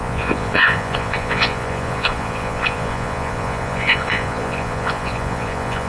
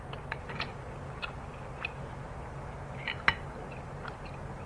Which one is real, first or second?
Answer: second